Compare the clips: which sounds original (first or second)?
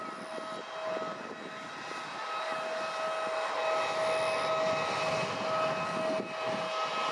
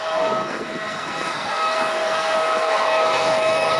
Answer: first